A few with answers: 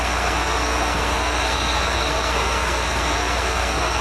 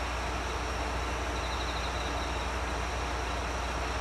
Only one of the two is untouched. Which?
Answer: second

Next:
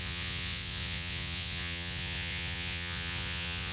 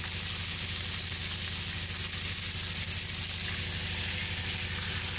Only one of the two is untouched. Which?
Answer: second